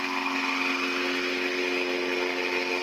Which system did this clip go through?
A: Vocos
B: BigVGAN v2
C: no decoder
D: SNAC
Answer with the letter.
C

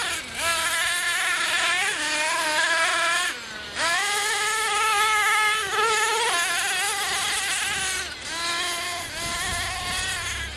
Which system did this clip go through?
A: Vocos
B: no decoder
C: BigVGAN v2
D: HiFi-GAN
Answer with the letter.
B